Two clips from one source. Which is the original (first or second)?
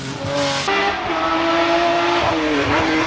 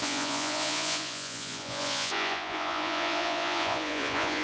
first